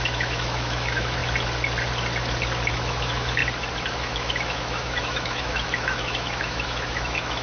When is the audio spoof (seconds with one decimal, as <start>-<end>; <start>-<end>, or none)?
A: 0.0-1.2; 2.7-3.4; 3.9-7.4